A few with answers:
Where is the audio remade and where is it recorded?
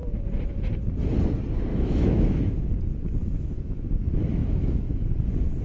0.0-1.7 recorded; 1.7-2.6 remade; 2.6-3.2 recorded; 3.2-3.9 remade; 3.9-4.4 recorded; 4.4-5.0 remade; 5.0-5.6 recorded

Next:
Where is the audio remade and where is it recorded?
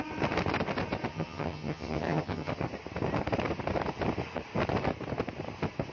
0.0-1.1 recorded; 1.1-2.5 remade; 2.5-5.9 recorded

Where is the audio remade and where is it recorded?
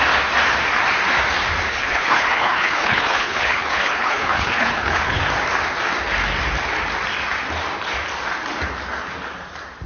0.0-1.7 recorded; 1.7-5.2 remade; 5.2-9.9 recorded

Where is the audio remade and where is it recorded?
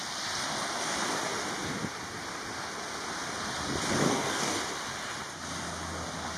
0.0-4.1 recorded; 4.1-4.6 remade; 4.6-6.4 recorded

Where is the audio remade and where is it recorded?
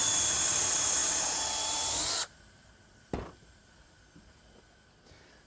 0.0-0.6 remade; 0.6-1.0 recorded; 1.0-4.0 remade; 4.0-5.5 recorded